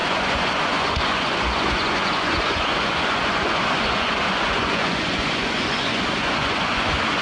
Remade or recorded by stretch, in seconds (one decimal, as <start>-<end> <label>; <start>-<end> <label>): 0.0-7.2 remade